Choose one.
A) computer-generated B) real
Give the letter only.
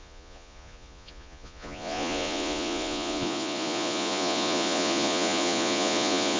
A